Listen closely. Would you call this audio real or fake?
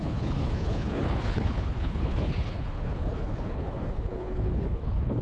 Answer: fake